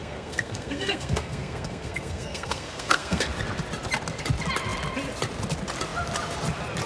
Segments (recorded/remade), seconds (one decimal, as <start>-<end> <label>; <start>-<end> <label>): 0.0-3.3 remade; 3.3-6.9 recorded